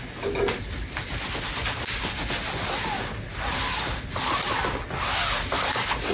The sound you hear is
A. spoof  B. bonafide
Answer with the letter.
B